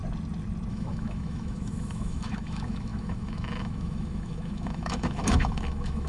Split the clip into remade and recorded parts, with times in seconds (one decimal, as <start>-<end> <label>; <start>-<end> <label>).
0.0-0.7 recorded; 0.7-6.1 remade